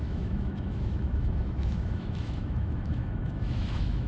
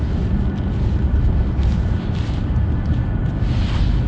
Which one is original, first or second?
second